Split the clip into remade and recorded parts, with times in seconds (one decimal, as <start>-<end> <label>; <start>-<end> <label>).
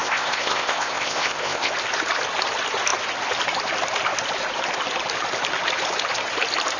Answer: 0.0-1.7 remade; 1.7-6.8 recorded